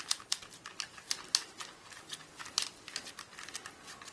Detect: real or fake real